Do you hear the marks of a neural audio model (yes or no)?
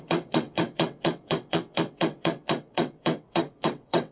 yes